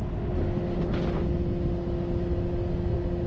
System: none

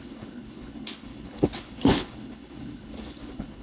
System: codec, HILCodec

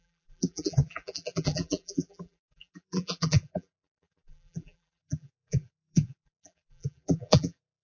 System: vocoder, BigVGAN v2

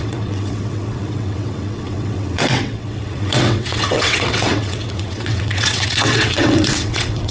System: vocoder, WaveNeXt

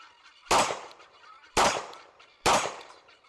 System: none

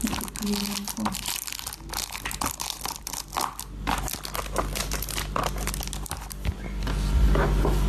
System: none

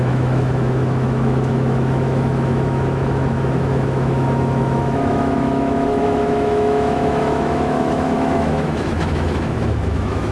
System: autoencoder, DAC-VAE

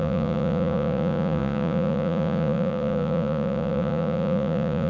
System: vocoder, Vocos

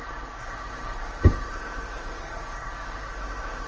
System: codec, SNAC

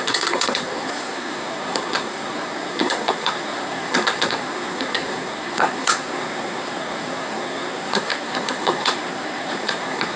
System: codec, SNAC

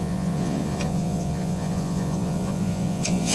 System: vocoder, Vocos